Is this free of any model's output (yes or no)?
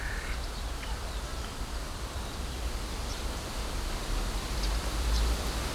no